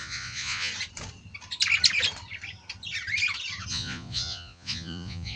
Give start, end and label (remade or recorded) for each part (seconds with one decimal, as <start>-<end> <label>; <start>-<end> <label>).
0.0-0.7 remade; 0.7-3.7 recorded; 3.7-5.4 remade